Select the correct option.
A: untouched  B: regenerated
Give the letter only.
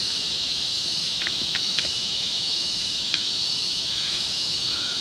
B